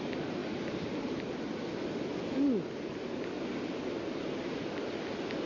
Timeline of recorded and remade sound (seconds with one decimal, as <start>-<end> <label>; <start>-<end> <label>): 0.0-5.5 recorded